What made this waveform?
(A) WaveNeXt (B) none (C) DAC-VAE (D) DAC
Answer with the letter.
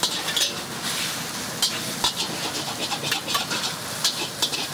B